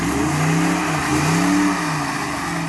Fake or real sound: real